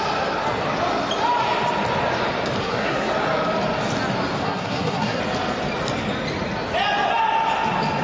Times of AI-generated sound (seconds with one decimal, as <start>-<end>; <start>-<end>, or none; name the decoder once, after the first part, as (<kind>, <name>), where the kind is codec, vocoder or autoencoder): 2.6-3.1 (codec, SNAC); 4.4-5.2